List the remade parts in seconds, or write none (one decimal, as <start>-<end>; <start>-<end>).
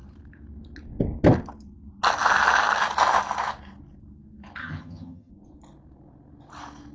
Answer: 4.6-5.3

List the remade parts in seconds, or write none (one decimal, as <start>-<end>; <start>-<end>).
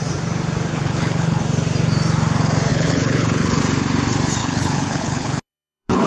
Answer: 0.7-1.4; 2.7-3.6; 4.4-6.1